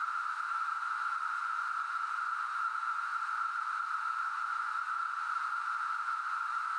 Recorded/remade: remade